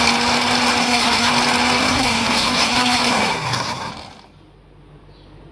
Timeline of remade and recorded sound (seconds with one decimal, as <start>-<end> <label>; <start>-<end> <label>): 0.0-0.8 recorded; 0.8-1.3 remade; 1.3-1.8 recorded; 1.8-3.9 remade; 3.9-5.5 recorded